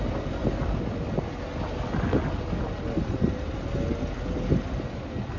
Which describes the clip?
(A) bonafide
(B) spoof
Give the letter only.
A